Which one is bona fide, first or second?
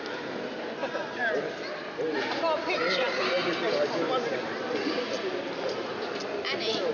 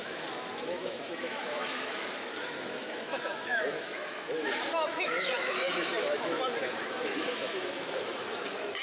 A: first